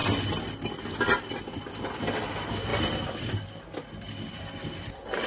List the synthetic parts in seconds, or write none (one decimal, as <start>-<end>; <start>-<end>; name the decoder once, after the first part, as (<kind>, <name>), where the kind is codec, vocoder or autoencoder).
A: none